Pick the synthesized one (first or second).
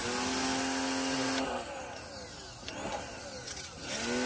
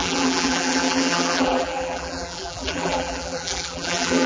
second